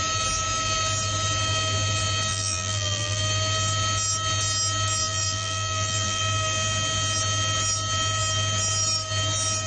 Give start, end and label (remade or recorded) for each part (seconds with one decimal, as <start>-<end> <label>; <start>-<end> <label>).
0.0-2.3 recorded; 2.3-3.2 remade; 3.2-5.0 recorded; 5.0-6.2 remade; 6.2-9.7 recorded